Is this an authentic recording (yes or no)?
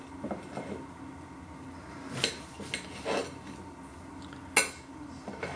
yes